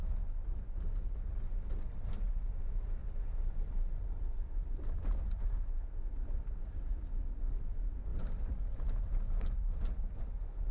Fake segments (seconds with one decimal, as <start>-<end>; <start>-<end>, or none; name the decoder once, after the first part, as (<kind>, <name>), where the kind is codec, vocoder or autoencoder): 2.6-8.1 (vocoder, BigVGAN v2); 9.0-10.7